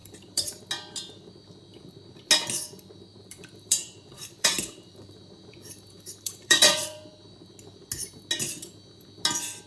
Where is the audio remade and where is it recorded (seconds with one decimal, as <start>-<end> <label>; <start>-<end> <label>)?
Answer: 0.0-0.6 remade; 0.6-3.1 recorded; 3.1-7.1 remade; 7.1-9.7 recorded